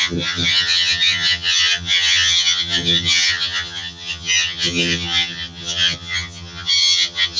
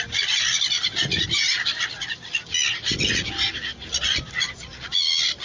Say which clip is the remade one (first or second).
first